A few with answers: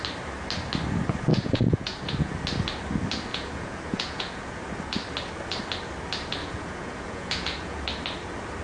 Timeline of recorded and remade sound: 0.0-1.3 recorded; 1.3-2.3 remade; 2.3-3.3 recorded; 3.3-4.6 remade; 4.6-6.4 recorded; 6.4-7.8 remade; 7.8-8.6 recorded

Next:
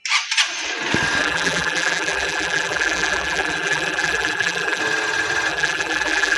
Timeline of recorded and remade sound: 0.0-1.2 recorded; 1.2-4.8 remade; 4.8-5.5 recorded; 5.5-6.4 remade